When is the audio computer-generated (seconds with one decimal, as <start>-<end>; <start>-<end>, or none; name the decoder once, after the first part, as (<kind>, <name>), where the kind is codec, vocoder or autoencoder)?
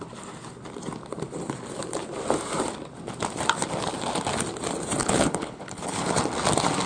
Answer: 5.0-6.2 (codec, HILCodec)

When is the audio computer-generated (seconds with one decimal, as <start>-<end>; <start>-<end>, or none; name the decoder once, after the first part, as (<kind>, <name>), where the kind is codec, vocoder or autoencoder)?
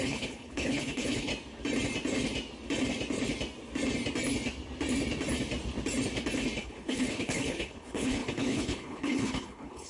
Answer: 0.0-1.3 (codec, HILCodec); 6.6-9.9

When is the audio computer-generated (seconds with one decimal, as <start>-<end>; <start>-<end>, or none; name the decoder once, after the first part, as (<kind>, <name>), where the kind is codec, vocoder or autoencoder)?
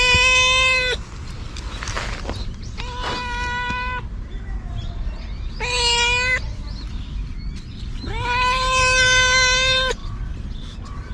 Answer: none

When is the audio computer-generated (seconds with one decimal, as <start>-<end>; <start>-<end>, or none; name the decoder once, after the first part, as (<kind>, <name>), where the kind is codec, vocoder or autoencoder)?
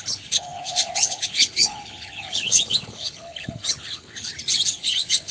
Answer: 0.0-4.3 (codec, HILCodec); 4.8-5.3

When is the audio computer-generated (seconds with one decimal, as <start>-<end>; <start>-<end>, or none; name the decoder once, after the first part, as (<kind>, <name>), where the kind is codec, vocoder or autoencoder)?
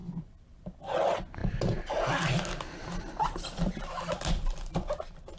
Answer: none